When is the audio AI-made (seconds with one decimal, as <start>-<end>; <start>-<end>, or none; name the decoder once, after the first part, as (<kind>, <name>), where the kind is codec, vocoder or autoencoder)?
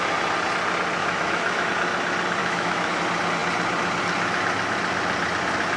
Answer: 1.0-1.7 (autoencoder, DAC-VAE); 2.4-3.0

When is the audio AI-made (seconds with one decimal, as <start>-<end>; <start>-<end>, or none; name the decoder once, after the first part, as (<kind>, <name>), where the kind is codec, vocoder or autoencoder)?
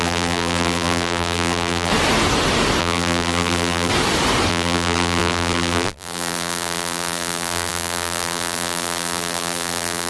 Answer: 0.0-1.9 (vocoder, BigVGAN v2); 2.8-3.9; 4.5-10.1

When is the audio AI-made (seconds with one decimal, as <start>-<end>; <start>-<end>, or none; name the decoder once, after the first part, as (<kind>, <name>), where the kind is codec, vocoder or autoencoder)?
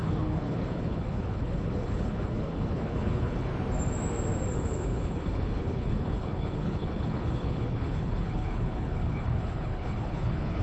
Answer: 0.0-3.5 (codec, HILCodec); 4.5-10.6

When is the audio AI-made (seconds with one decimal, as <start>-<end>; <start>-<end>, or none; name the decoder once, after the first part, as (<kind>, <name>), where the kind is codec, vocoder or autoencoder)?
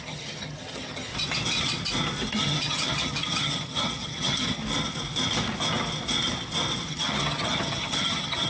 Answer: 0.0-1.1 (vocoder, HiFi-GAN); 2.3-4.6; 6.9-8.5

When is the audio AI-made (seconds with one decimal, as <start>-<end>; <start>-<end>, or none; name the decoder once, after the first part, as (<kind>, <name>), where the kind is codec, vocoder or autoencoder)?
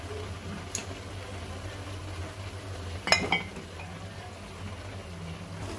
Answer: none